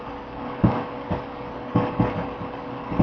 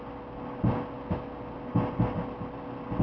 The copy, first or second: first